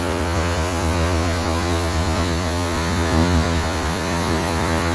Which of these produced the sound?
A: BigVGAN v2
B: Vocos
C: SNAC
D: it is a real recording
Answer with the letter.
B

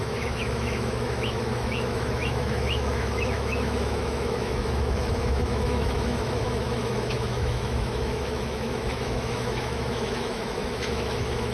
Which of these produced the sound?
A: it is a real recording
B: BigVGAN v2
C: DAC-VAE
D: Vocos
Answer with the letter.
C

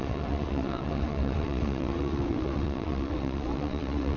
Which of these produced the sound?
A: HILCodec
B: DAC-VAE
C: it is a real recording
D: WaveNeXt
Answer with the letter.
D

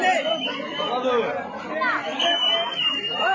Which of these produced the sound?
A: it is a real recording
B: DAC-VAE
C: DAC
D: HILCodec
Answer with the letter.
A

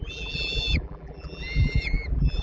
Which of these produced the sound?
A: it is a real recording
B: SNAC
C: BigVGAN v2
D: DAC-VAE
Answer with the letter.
C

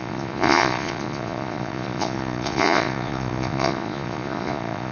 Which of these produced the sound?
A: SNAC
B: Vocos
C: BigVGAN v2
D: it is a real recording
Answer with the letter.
B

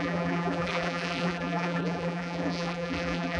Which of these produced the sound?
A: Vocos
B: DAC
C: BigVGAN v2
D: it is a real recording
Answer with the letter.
C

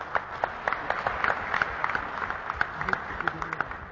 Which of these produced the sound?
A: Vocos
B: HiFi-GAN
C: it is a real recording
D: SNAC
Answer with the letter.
C